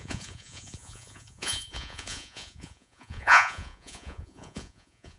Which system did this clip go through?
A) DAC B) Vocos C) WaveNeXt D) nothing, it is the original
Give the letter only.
B